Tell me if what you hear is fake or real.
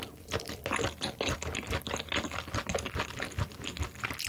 real